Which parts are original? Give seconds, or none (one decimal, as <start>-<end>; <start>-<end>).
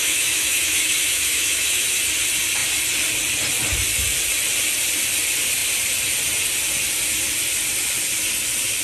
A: 2.0-8.8